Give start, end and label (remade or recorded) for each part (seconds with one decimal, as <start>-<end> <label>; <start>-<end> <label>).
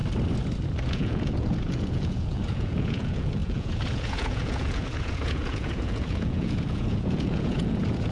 0.0-0.9 recorded; 0.9-8.1 remade